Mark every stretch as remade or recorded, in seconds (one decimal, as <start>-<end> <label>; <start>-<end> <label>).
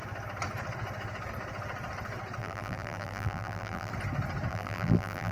0.0-2.4 recorded; 2.4-3.9 remade; 3.9-4.5 recorded; 4.5-5.3 remade